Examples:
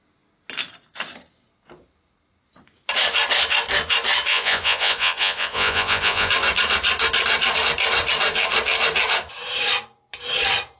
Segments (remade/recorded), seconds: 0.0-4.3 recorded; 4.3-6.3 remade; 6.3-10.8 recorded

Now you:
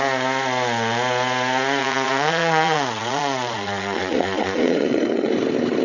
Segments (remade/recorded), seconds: 0.0-1.8 recorded; 1.8-5.3 remade; 5.3-5.8 recorded

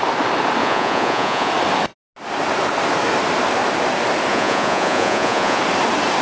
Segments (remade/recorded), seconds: 0.0-0.6 recorded; 0.6-1.5 remade; 1.5-4.3 recorded; 4.3-5.6 remade; 5.6-6.2 recorded

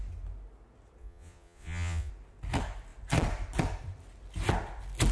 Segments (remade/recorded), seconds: 0.0-1.0 recorded; 1.0-2.1 remade; 2.1-5.1 recorded

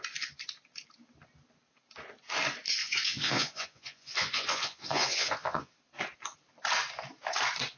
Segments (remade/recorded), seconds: 0.0-2.8 recorded; 2.8-5.7 remade; 5.7-7.8 recorded

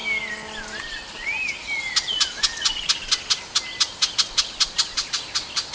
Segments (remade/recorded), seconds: 0.0-5.7 recorded

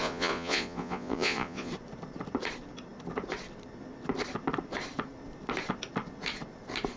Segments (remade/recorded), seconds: 0.0-1.7 remade; 1.7-7.0 recorded